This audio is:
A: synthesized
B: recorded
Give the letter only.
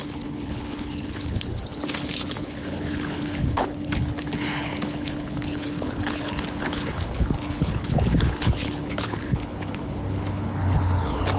A